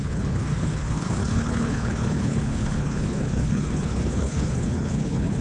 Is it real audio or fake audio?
fake